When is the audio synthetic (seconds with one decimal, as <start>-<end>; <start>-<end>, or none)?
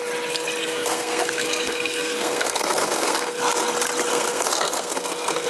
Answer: 0.6-3.4; 4.1-5.5